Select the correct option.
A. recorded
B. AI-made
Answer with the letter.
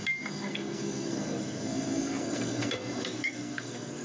B